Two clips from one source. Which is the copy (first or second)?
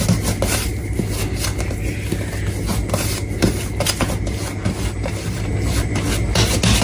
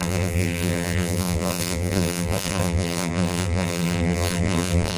second